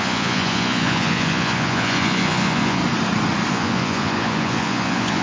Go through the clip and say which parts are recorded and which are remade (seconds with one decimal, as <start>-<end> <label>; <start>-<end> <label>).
0.0-2.8 remade; 2.8-3.5 recorded; 3.5-5.2 remade